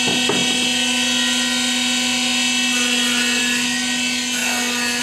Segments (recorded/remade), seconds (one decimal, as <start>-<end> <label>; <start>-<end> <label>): 0.0-5.0 recorded

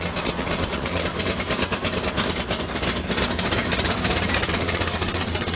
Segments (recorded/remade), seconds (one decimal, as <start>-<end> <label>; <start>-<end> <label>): 0.0-1.1 remade; 1.1-4.5 recorded; 4.5-5.6 remade